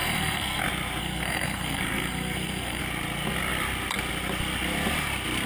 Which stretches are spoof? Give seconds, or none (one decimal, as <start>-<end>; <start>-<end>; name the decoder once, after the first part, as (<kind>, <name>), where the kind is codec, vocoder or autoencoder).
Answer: 0.0-0.6 (codec, SNAC); 1.0-2.8